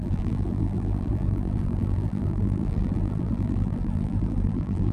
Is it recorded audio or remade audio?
remade